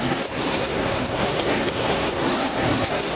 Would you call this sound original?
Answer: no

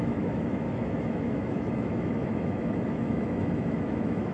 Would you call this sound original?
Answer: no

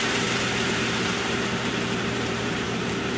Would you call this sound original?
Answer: no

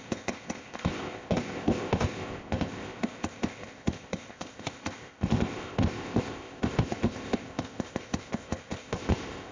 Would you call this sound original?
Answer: no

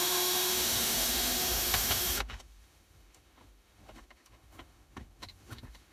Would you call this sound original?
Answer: no